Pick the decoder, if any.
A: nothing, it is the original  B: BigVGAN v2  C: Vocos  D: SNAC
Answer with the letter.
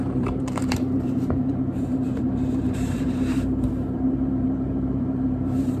B